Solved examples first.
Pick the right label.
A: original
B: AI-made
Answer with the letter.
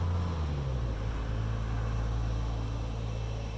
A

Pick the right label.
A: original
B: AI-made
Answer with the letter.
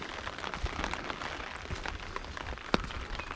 A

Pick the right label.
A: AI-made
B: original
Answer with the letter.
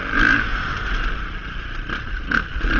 A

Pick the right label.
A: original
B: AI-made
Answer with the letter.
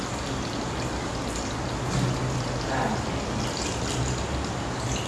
A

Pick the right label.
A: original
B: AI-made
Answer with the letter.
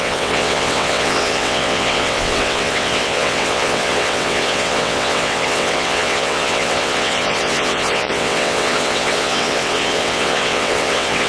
B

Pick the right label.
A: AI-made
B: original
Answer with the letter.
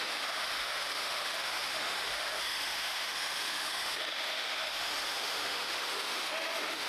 A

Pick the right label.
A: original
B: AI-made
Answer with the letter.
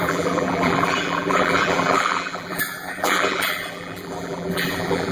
B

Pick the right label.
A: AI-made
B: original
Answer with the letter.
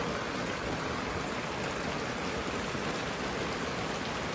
B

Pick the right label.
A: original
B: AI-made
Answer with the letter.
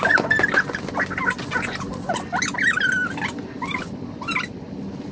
A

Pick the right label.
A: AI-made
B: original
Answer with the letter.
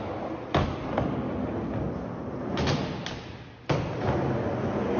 B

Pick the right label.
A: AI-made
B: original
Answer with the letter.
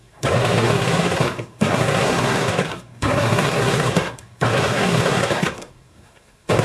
A